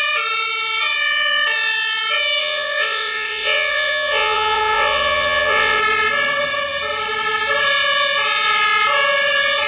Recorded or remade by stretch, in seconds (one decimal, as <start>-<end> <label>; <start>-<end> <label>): 0.0-2.4 recorded; 2.4-5.8 remade; 5.8-9.7 recorded